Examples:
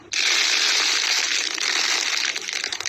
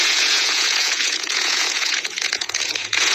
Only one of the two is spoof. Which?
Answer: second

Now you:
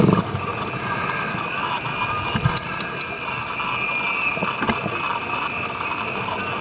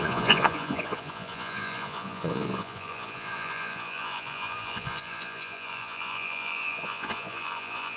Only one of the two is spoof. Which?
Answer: second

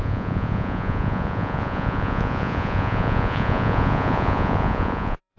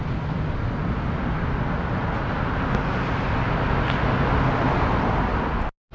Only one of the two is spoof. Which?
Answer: first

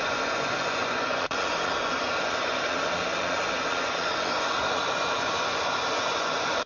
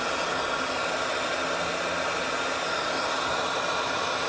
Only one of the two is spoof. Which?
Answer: first